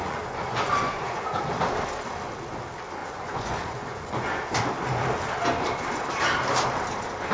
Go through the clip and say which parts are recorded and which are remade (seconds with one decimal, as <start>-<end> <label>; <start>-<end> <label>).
0.0-1.4 remade; 1.4-3.0 recorded; 3.0-4.5 remade; 4.5-7.3 recorded